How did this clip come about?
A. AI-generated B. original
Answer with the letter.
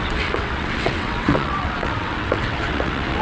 A